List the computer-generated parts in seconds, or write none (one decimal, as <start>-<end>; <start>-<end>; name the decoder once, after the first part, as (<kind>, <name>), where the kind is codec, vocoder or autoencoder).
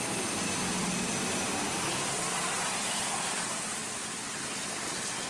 none